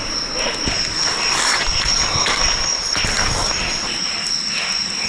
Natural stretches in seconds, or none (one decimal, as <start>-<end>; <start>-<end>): 0.0-5.1

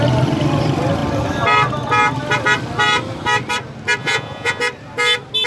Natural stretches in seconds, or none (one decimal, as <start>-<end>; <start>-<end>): 0.0-4.0; 4.6-5.5

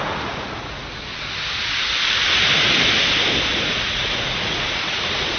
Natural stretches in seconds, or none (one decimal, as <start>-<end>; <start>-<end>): 1.1-3.5